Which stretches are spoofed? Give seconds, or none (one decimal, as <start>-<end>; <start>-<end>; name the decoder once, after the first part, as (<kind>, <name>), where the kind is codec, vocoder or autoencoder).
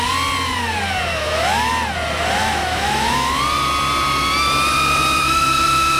1.1-1.7 (autoencoder, DAC-VAE); 2.4-3.4; 5.2-6.0